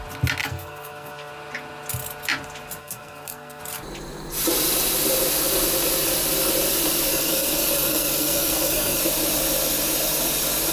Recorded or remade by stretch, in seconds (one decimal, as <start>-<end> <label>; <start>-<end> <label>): 0.0-0.4 recorded; 0.4-1.3 remade; 1.3-2.8 recorded; 2.8-3.6 remade; 3.6-7.1 recorded; 7.1-9.0 remade; 9.0-10.7 recorded